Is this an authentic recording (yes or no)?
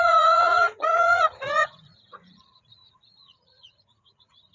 no